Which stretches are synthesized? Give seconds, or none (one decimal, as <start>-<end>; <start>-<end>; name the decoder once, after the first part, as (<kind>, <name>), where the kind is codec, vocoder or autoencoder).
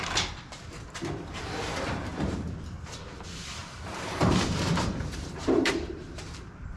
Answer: 2.1-2.8 (vocoder, BigVGAN v2); 3.6-5.7